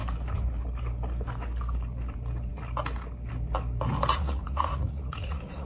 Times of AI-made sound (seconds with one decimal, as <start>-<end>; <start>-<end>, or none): 4.1-5.7